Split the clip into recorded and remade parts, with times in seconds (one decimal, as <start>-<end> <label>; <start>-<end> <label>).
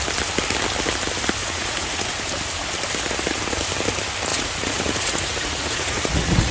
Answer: 0.0-1.4 recorded; 1.4-2.1 remade; 2.1-4.3 recorded; 4.3-6.5 remade